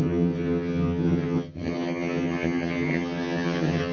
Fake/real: fake